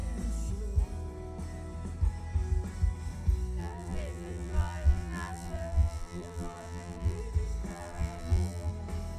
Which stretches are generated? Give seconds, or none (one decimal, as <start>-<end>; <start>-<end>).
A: 3.6-7.2; 7.7-8.7